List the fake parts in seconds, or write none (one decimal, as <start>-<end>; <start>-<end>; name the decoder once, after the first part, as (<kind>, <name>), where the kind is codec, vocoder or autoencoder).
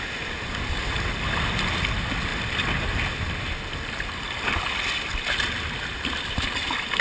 none